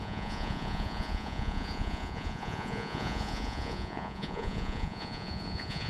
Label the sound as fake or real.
fake